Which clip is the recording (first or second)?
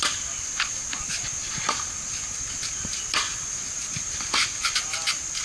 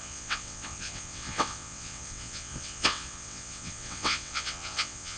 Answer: first